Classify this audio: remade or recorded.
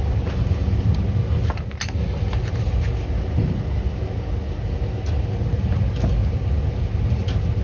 recorded